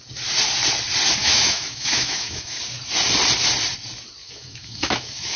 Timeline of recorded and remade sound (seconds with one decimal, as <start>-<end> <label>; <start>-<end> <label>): 0.0-1.2 recorded; 1.2-2.6 remade; 2.6-4.2 recorded; 4.2-5.4 remade